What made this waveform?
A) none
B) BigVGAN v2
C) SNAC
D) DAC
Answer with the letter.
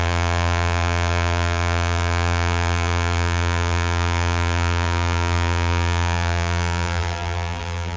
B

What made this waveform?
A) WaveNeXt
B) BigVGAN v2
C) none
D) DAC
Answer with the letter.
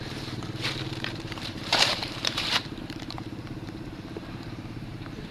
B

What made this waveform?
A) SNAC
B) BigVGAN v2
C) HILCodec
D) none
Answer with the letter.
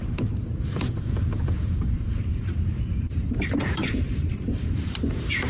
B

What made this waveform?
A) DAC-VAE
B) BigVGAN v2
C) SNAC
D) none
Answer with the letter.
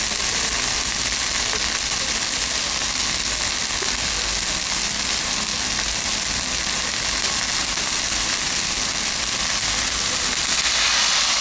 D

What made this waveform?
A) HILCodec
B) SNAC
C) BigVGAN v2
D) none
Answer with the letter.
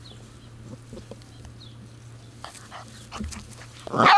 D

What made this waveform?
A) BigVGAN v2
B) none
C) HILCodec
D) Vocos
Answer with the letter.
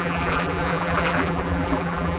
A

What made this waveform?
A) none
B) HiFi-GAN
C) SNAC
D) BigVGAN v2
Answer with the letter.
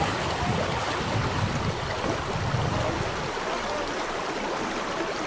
A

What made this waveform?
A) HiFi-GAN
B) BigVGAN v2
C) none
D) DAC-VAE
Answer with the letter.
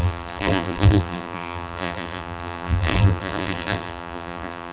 B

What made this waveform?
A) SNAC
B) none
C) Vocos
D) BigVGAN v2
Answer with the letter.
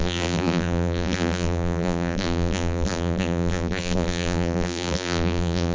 D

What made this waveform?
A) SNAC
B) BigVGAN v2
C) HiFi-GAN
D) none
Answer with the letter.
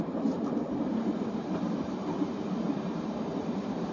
B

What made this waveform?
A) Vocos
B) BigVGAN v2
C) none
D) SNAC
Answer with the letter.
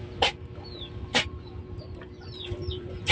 B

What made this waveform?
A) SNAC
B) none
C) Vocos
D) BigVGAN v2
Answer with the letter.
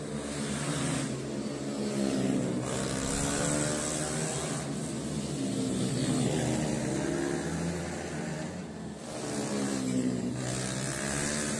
B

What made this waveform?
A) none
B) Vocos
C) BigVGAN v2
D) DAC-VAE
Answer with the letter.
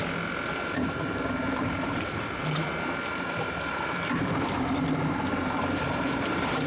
C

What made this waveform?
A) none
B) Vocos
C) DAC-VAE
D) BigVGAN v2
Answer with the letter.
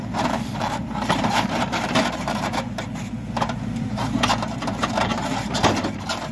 D